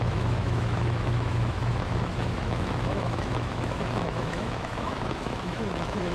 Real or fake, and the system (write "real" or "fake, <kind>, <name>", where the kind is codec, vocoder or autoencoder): fake, autoencoder, DAC-VAE